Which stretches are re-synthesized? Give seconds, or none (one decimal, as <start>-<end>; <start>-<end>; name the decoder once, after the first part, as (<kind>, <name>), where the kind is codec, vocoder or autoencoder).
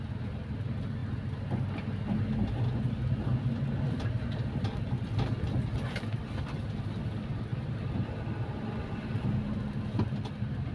none